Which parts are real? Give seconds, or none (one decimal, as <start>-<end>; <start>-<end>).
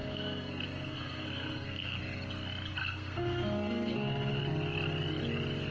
2.0-2.8; 4.4-5.7